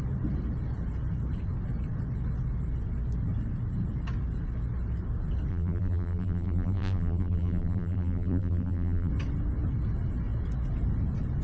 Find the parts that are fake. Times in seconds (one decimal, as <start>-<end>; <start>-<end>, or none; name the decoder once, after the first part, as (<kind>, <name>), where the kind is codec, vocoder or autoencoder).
5.5-9.1 (vocoder, BigVGAN v2)